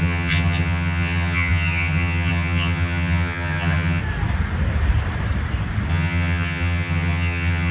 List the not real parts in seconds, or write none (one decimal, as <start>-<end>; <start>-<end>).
0.0-4.0; 5.9-7.7